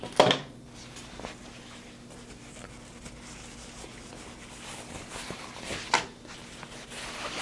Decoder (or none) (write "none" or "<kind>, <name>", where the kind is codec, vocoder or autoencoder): none